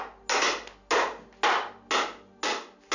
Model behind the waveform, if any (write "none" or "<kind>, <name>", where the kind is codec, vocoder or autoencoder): none